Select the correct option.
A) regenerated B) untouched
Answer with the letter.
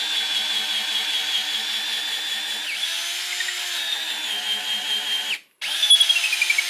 B